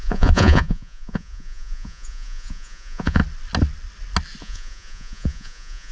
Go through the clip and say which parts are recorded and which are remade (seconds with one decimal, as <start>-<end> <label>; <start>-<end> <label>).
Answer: 0.0-3.2 remade; 3.2-4.4 recorded; 4.4-5.9 remade